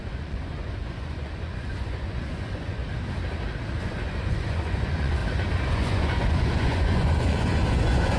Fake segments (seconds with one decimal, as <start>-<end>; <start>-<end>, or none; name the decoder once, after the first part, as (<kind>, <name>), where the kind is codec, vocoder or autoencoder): 0.0-2.8 (vocoder, Vocos); 3.8-5.2; 5.7-8.2